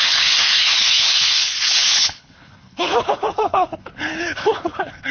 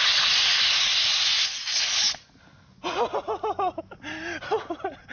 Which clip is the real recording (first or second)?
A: second